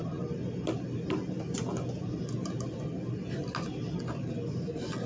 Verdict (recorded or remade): recorded